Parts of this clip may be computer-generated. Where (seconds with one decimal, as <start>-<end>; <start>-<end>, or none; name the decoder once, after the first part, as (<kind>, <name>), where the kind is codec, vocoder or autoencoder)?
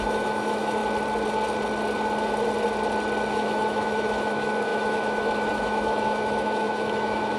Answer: 0.0-0.8 (autoencoder, DAC-VAE); 3.3-7.4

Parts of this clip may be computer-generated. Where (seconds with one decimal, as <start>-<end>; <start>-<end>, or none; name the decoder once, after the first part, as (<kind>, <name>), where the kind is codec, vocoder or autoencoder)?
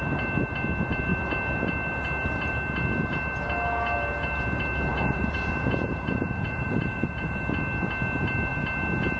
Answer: 4.9-7.4 (vocoder, Vocos)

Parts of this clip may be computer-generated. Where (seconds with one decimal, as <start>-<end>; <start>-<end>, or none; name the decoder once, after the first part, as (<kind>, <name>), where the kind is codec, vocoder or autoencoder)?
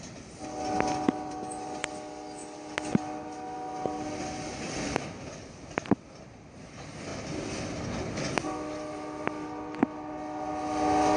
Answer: none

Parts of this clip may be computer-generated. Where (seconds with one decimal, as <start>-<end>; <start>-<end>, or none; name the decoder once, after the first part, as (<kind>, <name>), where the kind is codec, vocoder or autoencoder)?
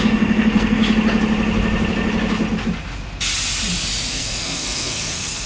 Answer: 0.0-0.8 (codec, SNAC); 4.1-5.5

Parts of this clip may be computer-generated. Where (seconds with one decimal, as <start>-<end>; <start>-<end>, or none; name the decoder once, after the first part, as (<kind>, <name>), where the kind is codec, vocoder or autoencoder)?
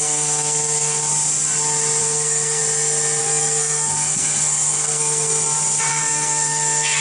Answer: 0.0-1.1 (codec, SNAC); 2.0-2.6; 3.2-5.3; 5.9-7.0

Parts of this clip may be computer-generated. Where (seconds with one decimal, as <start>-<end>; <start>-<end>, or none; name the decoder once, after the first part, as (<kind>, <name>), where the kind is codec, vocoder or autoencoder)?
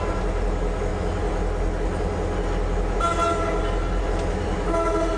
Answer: none